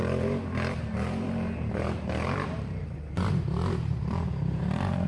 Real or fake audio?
fake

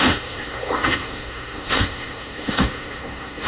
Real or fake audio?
fake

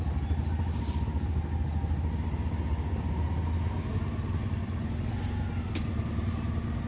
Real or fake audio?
real